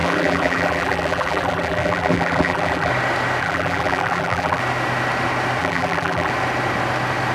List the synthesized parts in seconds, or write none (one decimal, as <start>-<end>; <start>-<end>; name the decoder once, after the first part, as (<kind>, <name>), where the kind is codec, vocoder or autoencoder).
0.0-2.9 (vocoder, BigVGAN v2); 3.4-4.6; 5.6-6.3